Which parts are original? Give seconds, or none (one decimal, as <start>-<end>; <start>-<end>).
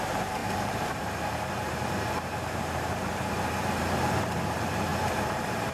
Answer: 4.9-5.7